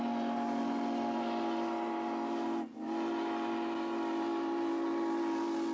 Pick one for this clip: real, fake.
real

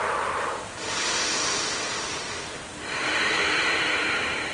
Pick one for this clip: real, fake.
real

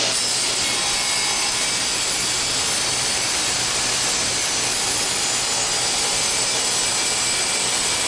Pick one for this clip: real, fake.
real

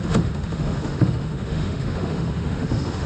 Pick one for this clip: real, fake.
fake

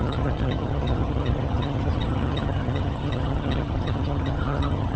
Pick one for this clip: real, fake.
fake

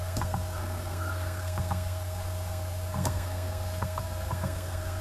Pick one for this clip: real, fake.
fake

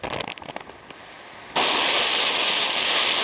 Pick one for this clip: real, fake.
real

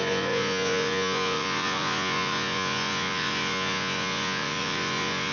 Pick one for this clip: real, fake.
fake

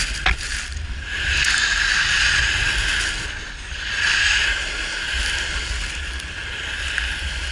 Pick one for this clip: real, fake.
real